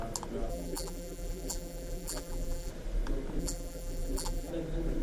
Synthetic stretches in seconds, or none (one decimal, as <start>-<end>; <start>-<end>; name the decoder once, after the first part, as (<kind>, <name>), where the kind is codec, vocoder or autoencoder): 0.5-2.7 (vocoder, BigVGAN v2); 3.4-4.5

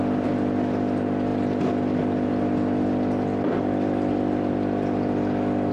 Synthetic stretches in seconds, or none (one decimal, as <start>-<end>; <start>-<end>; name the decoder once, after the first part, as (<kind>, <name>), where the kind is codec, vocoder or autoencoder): none

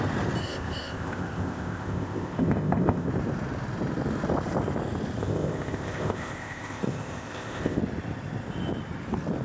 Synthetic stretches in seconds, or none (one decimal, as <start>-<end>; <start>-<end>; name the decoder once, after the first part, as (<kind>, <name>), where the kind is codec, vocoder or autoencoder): 0.4-3.1 (codec, ZipCodec); 5.2-7.8

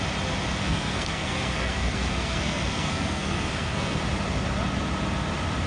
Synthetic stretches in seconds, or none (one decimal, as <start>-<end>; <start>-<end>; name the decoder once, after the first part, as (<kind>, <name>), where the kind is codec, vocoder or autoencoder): 0.6-4.0 (codec, SNAC)

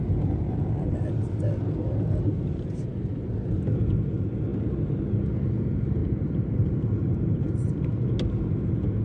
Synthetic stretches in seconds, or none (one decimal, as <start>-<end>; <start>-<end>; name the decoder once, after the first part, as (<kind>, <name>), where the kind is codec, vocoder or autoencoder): 6.0-8.1 (vocoder, BigVGAN v2)

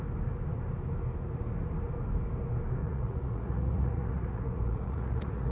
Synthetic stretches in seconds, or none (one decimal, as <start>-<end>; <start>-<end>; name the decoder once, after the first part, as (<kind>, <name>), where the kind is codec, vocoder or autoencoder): 2.8-5.5 (vocoder, Vocos)